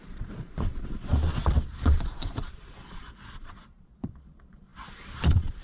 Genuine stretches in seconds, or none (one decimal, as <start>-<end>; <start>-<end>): none